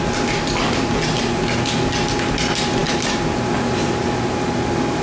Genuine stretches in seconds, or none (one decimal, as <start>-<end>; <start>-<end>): 0.0-5.0